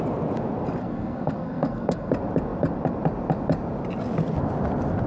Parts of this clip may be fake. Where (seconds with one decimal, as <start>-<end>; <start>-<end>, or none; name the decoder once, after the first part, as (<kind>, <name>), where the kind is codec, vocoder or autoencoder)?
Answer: 0.8-2.1 (codec, SNAC)

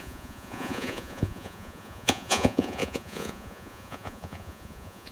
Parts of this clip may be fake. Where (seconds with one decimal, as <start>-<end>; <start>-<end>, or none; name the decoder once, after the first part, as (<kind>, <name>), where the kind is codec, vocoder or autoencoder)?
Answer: 0.0-5.1 (vocoder, Vocos)